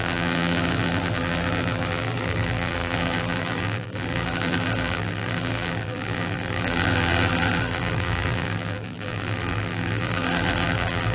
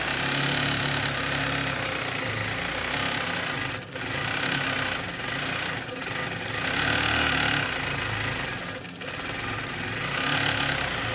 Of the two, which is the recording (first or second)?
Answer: second